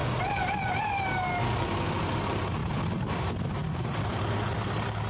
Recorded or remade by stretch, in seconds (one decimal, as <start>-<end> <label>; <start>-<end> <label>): 0.0-2.6 recorded; 2.6-3.2 remade; 3.2-3.6 recorded; 3.6-4.2 remade; 4.2-5.1 recorded